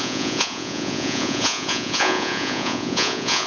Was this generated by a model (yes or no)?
yes